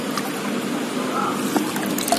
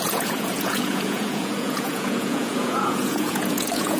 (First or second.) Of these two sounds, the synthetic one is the second